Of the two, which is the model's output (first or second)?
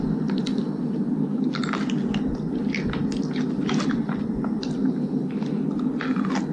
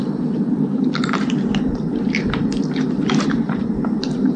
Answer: second